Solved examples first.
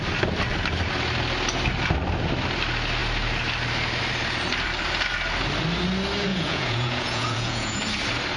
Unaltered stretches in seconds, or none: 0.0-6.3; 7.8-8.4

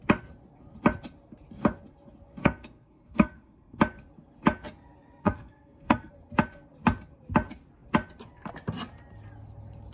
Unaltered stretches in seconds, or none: 0.0-2.4; 3.8-5.2; 6.1-9.9

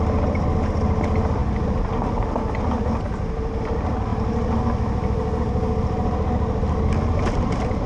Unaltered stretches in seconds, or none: 0.0-7.9

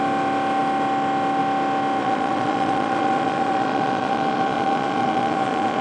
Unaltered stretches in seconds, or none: 0.0-2.0

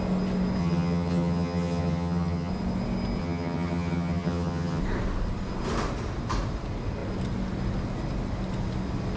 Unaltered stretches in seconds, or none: 0.0-0.6; 2.5-3.2; 4.8-9.2

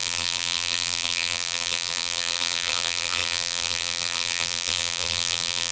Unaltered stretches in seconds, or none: none

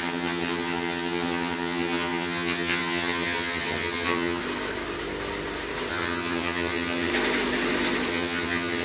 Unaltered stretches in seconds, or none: 4.4-5.9; 7.1-8.1